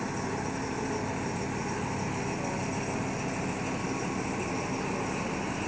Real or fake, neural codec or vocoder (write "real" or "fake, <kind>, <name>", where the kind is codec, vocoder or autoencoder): real